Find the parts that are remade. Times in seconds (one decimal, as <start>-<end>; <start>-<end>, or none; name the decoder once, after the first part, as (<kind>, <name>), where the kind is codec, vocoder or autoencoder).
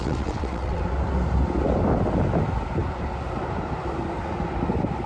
0.0-0.8 (vocoder, WaveNeXt)